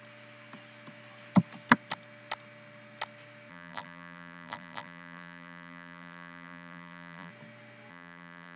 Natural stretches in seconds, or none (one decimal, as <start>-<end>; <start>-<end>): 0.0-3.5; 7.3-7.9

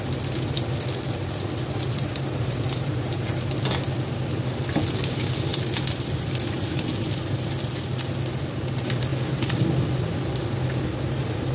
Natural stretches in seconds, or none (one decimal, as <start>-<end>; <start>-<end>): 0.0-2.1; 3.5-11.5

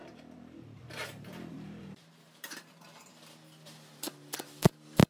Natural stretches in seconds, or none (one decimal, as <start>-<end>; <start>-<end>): 3.1-5.1

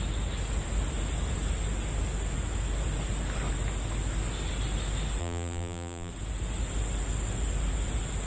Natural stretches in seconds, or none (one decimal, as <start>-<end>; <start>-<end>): 0.0-5.2; 6.1-8.3

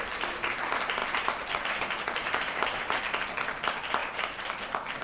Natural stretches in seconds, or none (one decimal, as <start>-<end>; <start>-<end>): 0.0-1.0; 3.0-4.0; 4.5-5.0

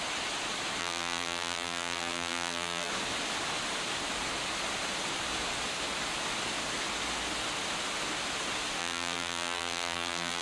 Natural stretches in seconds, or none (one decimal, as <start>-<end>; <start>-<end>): 0.0-0.8; 2.9-8.8

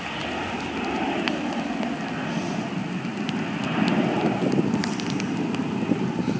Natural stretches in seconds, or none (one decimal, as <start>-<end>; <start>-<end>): 0.0-6.4